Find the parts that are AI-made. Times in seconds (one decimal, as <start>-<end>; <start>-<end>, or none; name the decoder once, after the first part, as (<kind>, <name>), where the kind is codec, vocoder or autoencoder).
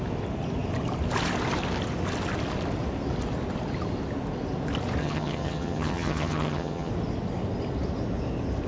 5.0-6.9 (vocoder, HiFi-GAN)